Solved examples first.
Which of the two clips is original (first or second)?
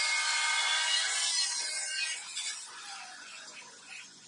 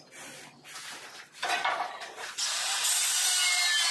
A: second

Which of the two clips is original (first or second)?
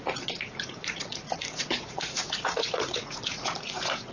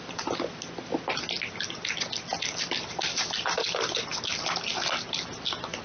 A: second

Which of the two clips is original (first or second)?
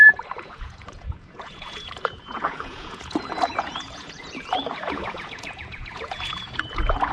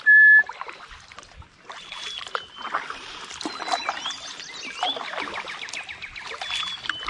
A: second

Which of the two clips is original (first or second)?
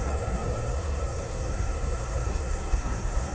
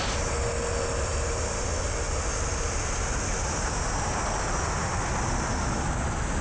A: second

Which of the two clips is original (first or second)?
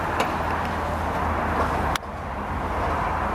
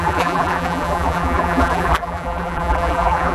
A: first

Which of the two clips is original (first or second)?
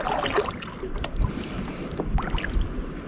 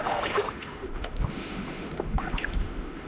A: first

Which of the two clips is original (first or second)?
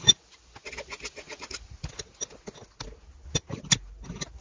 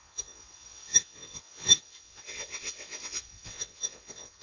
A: first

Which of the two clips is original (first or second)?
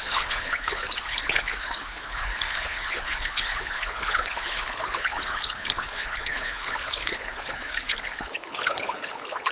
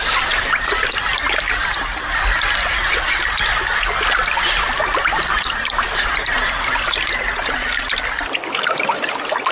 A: second